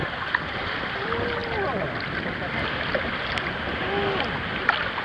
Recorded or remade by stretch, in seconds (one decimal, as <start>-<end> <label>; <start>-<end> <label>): 0.0-5.0 recorded